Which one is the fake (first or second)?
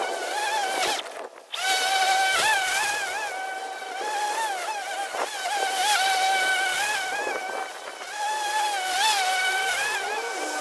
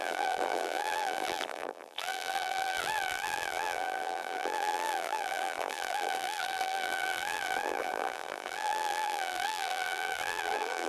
second